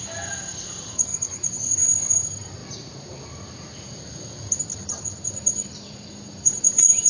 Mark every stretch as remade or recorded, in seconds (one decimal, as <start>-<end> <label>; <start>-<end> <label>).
0.0-2.6 remade; 2.6-5.0 recorded; 5.0-7.1 remade